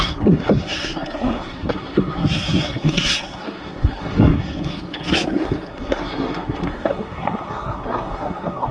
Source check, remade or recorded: remade